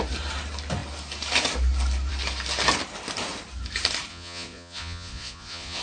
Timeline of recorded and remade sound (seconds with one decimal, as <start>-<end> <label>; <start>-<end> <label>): 0.0-4.1 recorded; 4.1-5.8 remade